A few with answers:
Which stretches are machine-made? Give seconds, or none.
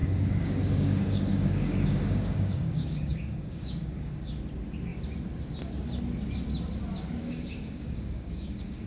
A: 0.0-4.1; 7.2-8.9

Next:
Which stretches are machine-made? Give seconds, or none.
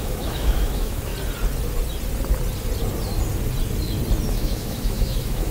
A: 0.0-1.1; 4.3-5.5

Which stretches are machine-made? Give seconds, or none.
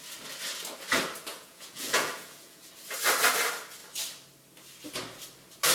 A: 1.3-2.6